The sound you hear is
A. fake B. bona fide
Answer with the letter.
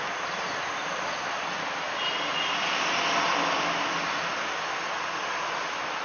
B